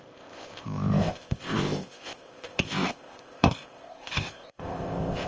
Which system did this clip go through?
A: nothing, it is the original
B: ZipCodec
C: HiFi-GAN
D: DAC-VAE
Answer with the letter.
B